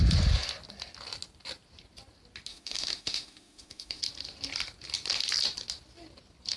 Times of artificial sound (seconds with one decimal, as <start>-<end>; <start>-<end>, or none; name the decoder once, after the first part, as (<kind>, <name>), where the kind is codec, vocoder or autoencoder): 2.5-4.0 (autoencoder, DAC-VAE)